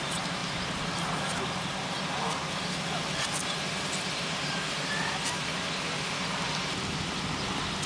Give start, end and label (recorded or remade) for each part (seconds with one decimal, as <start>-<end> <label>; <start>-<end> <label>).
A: 0.0-7.9 recorded